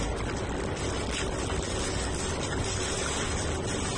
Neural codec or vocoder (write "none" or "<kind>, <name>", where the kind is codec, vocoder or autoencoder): none